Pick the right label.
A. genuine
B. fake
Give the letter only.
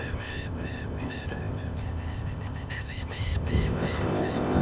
B